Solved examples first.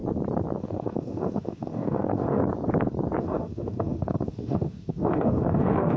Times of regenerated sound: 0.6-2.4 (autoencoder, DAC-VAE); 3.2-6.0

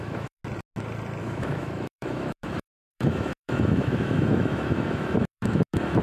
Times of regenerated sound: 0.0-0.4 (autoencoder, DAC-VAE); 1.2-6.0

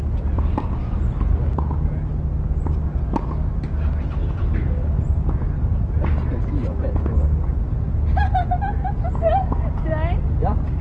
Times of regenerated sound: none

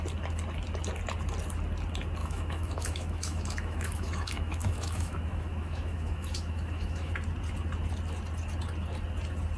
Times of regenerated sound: 2.2-7.1 (autoencoder, DAC-VAE)

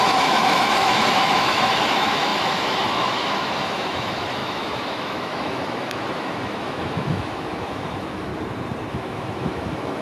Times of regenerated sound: 0.0-8.3 (autoencoder, DAC-VAE); 8.9-10.0

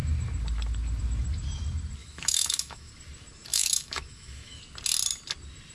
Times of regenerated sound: 2.0-2.9 (autoencoder, DAC-VAE); 3.5-4.6

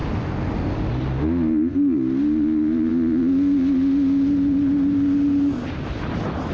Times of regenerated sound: none